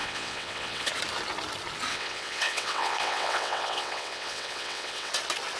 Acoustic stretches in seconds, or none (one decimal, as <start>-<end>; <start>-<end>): 0.9-1.9; 5.1-5.6